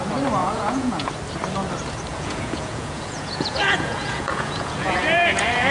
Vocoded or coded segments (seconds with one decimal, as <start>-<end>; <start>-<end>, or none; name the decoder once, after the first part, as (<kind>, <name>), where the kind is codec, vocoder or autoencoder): 0.4-1.1 (vocoder, Vocos); 2.1-5.7